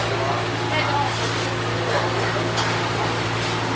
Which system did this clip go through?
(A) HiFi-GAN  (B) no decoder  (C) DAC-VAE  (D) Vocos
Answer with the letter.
B